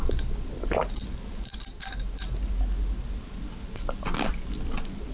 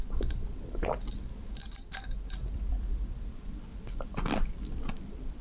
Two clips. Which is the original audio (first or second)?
first